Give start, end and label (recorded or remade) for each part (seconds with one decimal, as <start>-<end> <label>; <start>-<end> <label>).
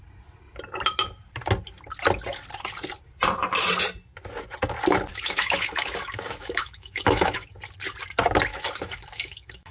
0.0-5.1 recorded; 5.1-7.6 remade; 7.6-8.5 recorded; 8.5-9.7 remade